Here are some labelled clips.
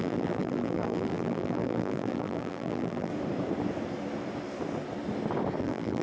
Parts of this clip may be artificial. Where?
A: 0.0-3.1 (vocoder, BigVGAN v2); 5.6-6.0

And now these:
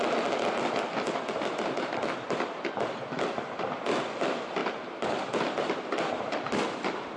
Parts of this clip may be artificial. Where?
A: none